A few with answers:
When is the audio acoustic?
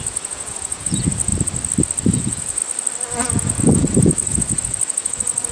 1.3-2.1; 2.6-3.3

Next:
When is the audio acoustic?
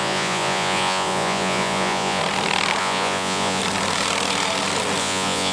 2.2-2.8; 3.6-5.0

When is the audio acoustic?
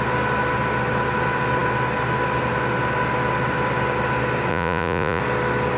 0.0-4.5; 5.2-5.8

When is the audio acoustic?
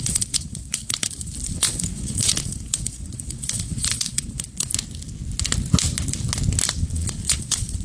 4.7-6.8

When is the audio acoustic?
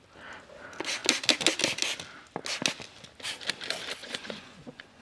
0.0-4.0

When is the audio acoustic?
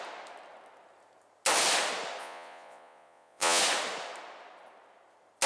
0.0-2.2; 3.6-5.5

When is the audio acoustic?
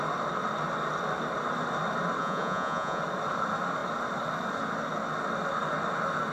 0.0-2.2; 3.0-6.3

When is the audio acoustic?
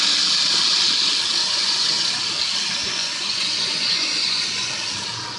0.0-1.4; 2.2-2.8; 4.7-5.4